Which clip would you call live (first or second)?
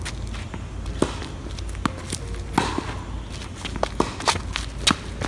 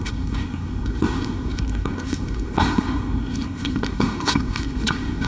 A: first